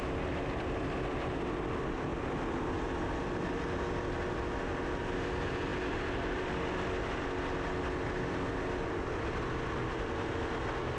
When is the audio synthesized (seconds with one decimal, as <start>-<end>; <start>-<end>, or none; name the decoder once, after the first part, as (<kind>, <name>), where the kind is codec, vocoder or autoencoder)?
none